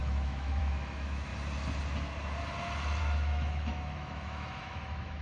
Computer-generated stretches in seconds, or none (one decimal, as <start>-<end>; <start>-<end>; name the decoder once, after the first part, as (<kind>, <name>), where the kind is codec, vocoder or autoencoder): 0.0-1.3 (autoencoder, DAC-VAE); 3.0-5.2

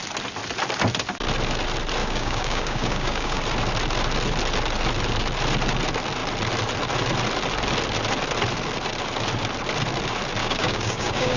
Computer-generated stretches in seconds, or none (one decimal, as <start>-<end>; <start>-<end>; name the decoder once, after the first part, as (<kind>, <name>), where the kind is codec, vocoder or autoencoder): 2.0-3.4 (codec, DAC); 10.4-11.4

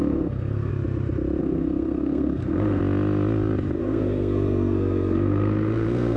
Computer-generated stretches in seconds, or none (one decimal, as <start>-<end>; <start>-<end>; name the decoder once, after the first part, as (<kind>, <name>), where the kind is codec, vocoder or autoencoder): 0.0-0.7 (codec, SNAC); 1.4-2.8; 3.8-6.2